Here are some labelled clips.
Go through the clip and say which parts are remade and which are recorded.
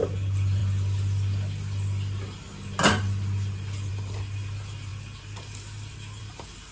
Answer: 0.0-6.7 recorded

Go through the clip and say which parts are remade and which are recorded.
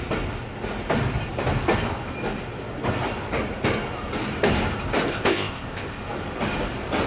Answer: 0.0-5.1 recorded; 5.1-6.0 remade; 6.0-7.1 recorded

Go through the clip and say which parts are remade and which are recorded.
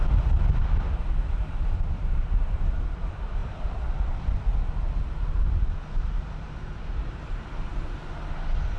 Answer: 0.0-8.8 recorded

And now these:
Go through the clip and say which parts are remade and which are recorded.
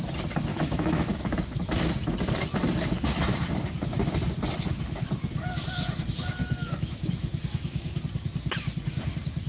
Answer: 0.0-0.5 recorded; 0.5-1.1 remade; 1.1-6.4 recorded; 6.4-8.0 remade; 8.0-9.5 recorded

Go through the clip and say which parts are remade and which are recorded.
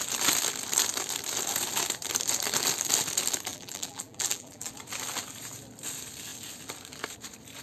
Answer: 0.0-3.5 recorded; 3.5-4.7 remade; 4.7-7.6 recorded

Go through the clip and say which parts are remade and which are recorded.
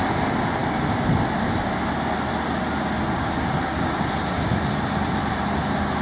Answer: 0.0-6.0 recorded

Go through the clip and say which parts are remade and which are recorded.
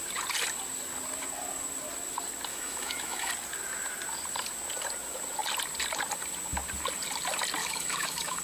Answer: 0.0-2.5 recorded; 2.5-3.3 remade; 3.3-7.6 recorded; 7.6-8.4 remade